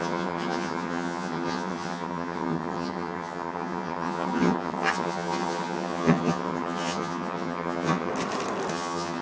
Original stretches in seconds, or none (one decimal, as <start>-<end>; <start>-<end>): 8.1-8.7